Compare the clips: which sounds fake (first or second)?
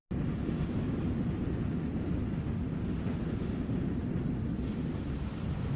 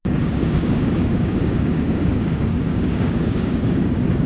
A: second